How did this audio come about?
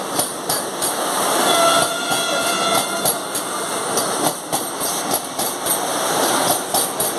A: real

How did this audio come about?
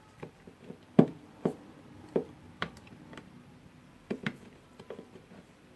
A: fake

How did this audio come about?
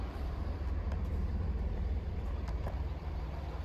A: fake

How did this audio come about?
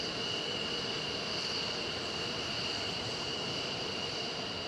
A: fake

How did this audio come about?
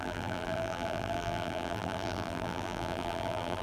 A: fake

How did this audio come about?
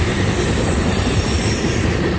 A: fake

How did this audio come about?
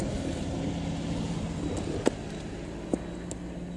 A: real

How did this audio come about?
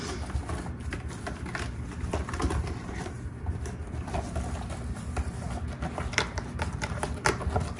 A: fake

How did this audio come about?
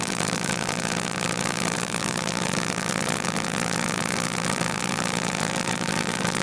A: fake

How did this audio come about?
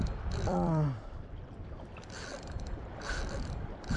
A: fake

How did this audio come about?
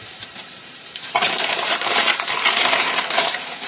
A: fake